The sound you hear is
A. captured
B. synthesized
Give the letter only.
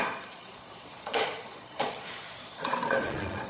B